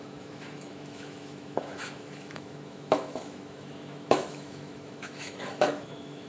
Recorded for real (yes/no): no